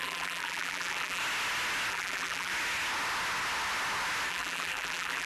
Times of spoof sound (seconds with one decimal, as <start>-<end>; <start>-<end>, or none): 0.0-1.2; 1.9-2.5; 4.3-5.3